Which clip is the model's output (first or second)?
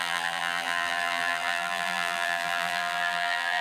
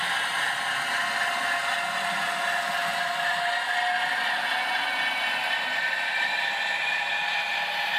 first